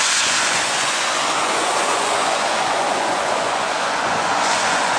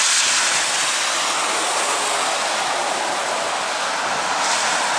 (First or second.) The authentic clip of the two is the second